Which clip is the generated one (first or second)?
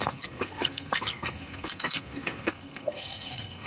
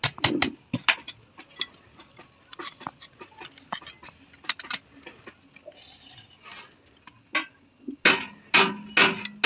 first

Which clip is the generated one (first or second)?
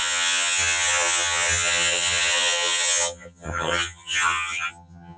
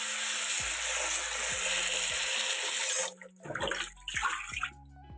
first